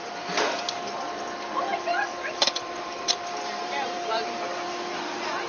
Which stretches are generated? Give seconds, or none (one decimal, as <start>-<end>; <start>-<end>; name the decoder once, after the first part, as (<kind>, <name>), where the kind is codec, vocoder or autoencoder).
2.1-5.5 (vocoder, BigVGAN v2)